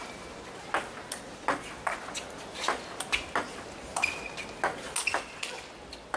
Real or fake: real